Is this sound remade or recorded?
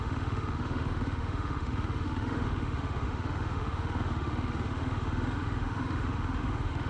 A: remade